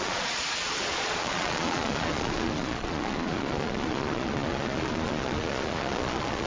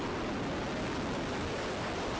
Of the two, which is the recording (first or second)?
second